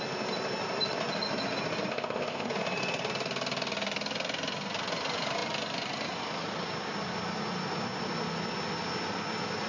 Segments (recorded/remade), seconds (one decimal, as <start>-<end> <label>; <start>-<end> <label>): 0.0-1.9 recorded; 1.9-2.5 remade; 2.5-9.7 recorded